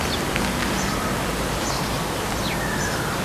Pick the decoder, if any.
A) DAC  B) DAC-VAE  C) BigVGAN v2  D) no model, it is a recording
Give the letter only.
D